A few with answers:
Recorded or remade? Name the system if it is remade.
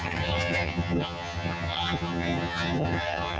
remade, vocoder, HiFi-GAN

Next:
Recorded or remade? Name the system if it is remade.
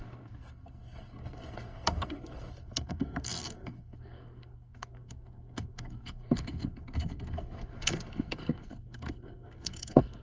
remade, codec, SNAC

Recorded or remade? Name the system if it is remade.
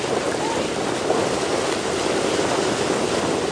recorded